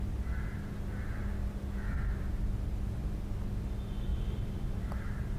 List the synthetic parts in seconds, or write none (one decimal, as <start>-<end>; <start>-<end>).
4.1-5.4